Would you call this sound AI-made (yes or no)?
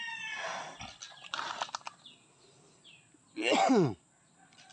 no